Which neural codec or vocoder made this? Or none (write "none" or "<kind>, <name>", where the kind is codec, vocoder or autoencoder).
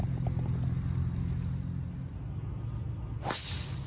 none